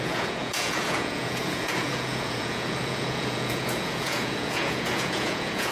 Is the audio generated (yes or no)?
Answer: yes